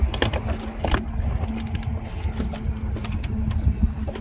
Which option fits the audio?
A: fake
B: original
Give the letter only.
B